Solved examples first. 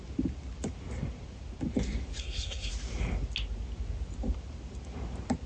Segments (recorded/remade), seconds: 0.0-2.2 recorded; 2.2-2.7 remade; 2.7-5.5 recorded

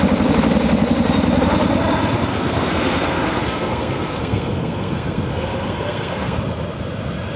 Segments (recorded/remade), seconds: 0.0-2.3 recorded; 2.3-6.4 remade; 6.4-7.4 recorded

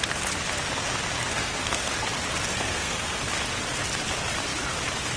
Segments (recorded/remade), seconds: 0.0-1.2 recorded; 1.2-1.9 remade; 1.9-2.5 recorded; 2.5-3.3 remade; 3.3-5.2 recorded

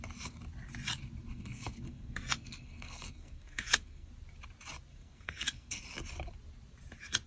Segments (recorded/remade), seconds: 0.0-1.3 recorded; 1.3-4.1 remade; 4.1-4.9 recorded; 4.9-5.8 remade; 5.8-7.3 recorded

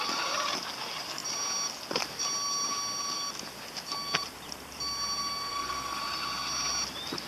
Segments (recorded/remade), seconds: 0.0-5.5 recorded; 5.5-6.0 remade; 6.0-7.3 recorded